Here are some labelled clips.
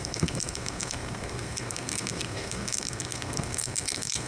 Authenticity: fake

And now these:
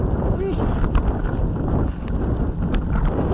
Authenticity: real